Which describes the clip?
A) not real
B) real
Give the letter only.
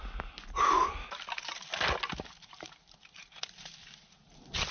B